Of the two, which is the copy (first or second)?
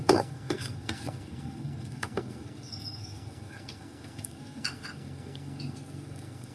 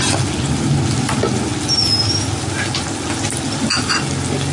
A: first